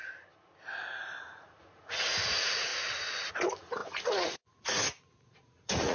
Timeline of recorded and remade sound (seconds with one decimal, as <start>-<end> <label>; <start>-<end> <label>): 0.0-1.2 recorded; 1.2-2.7 remade; 2.7-3.3 recorded; 3.3-5.9 remade